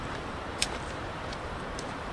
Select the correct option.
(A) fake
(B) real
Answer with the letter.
A